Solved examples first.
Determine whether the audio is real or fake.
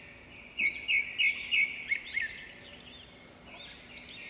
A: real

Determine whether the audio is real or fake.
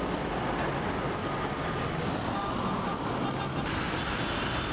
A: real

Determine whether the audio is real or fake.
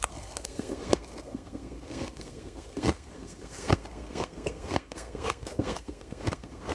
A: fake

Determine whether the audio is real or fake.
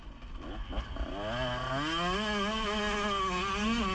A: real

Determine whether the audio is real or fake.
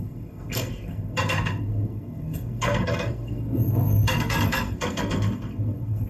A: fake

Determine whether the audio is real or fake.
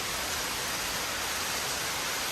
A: real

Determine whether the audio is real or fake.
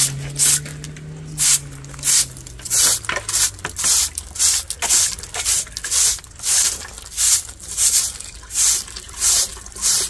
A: real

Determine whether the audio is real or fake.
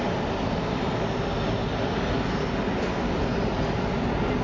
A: real